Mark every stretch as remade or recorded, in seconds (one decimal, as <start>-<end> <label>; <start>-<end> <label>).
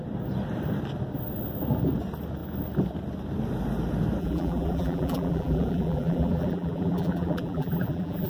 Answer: 0.0-4.2 recorded; 4.2-8.3 remade